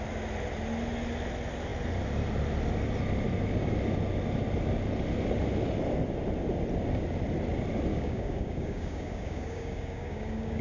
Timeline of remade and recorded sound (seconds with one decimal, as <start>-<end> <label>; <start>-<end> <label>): 0.0-7.9 recorded; 7.9-10.6 remade